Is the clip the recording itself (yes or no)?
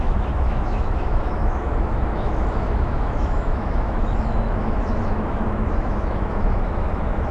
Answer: no